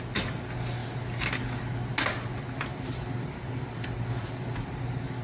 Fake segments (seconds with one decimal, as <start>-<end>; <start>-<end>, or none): 2.7-4.8

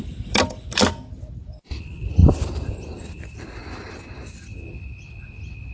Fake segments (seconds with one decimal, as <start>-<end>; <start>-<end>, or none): 2.2-3.6